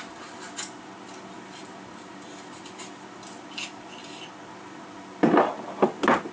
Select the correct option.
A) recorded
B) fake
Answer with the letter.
A